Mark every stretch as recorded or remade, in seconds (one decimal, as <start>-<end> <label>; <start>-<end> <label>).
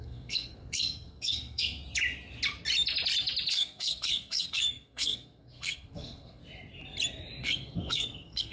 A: 0.0-1.8 remade; 1.8-3.5 recorded; 3.5-6.4 remade; 6.4-7.4 recorded; 7.4-8.5 remade